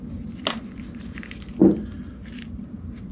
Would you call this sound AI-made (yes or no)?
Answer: no